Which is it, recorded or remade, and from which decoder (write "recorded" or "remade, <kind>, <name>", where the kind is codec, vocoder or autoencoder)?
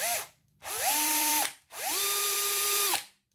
remade, vocoder, BigVGAN v2